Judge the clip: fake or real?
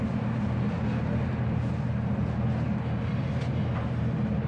real